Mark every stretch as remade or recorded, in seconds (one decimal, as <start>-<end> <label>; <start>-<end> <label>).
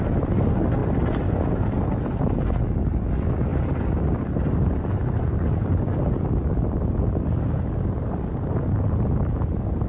0.0-3.5 recorded; 3.5-8.0 remade; 8.0-9.9 recorded